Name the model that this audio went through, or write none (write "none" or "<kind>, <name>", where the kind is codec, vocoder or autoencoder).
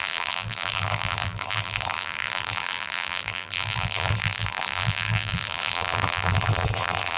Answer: vocoder, BigVGAN v2